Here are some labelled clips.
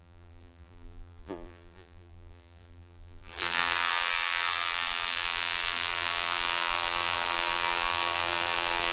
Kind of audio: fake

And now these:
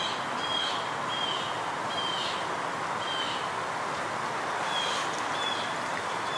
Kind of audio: real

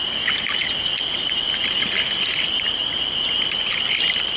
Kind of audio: real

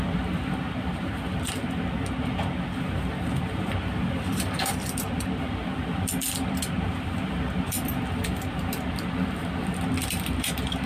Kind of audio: fake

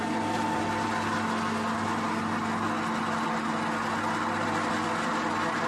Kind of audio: real